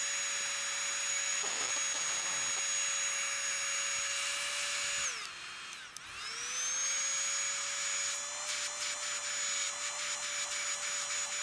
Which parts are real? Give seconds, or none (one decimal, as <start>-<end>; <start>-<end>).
0.0-1.1; 1.7-11.4